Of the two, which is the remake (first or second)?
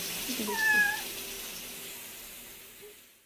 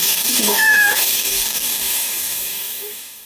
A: second